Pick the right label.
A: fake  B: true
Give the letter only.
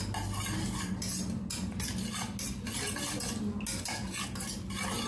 B